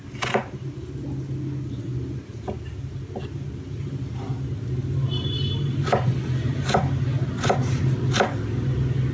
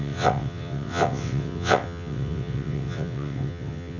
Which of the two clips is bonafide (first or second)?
first